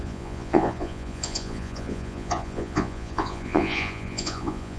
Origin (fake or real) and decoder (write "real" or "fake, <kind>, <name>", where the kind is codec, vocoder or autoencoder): fake, vocoder, Vocos